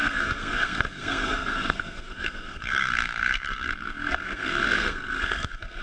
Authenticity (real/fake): fake